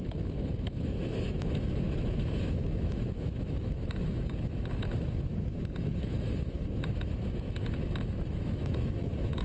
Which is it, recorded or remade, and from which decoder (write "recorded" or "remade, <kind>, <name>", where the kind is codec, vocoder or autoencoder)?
remade, autoencoder, DAC-VAE